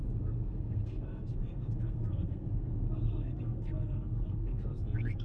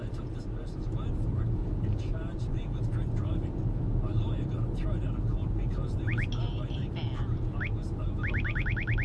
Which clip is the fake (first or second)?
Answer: first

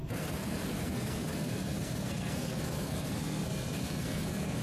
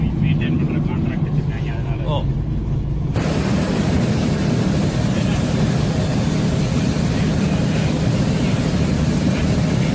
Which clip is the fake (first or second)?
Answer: first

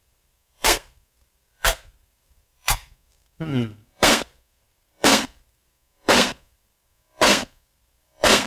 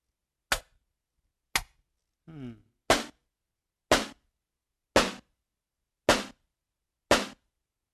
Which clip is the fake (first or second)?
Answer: first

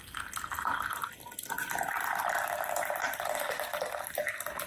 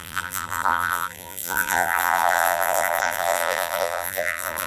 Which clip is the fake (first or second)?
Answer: second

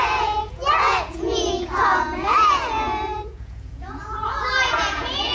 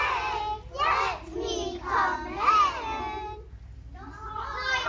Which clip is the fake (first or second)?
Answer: first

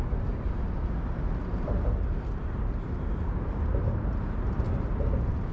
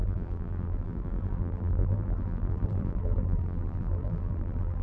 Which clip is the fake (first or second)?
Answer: second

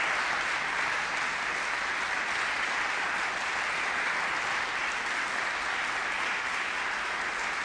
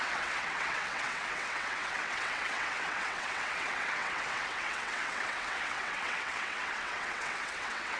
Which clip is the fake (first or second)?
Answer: second